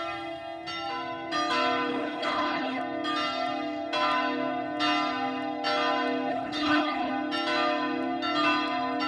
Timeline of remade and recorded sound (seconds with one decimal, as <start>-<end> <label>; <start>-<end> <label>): 0.0-1.9 recorded; 1.9-2.8 remade; 2.8-6.3 recorded; 6.3-7.1 remade; 7.1-9.1 recorded